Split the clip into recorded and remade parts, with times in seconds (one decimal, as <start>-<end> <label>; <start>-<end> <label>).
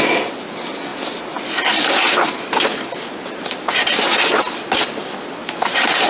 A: 0.0-6.1 recorded